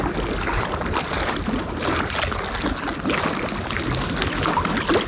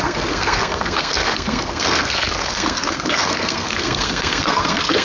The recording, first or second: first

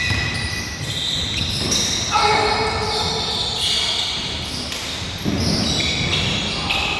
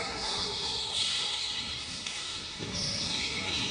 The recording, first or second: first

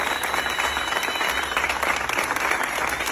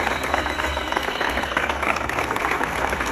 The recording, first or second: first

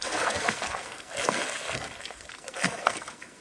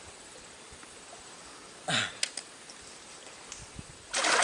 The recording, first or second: second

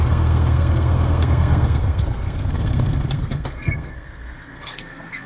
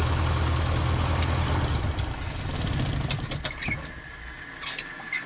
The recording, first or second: second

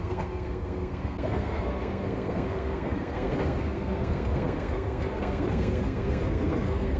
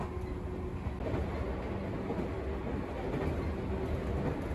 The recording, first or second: second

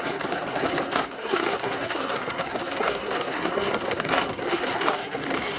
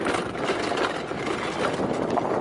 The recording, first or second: second